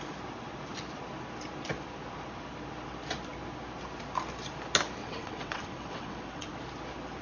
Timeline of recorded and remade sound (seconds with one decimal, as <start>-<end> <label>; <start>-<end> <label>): 0.0-5.0 recorded; 5.0-6.5 remade; 6.5-7.2 recorded